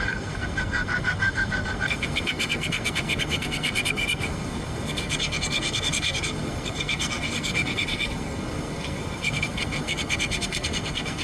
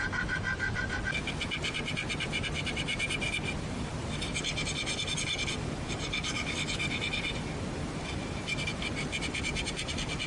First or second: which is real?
second